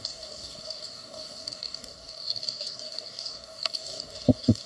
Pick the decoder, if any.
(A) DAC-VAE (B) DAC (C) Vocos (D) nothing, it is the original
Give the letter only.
B